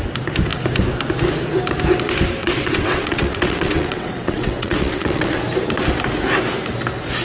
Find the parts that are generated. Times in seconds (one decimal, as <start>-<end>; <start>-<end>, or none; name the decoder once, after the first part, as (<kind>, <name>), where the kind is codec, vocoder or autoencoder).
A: 2.4-5.4 (vocoder, WaveNeXt)